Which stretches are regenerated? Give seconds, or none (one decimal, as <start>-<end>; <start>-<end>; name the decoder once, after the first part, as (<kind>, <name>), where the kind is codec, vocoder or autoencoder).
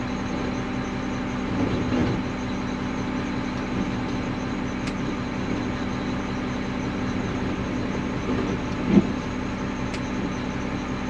none